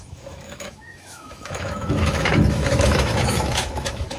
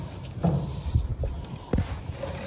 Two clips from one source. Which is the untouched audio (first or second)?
second